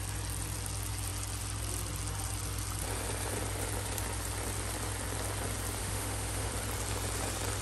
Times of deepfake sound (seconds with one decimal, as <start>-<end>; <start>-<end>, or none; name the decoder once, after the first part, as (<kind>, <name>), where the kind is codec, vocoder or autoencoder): 5.8-6.5 (autoencoder, DAC-VAE)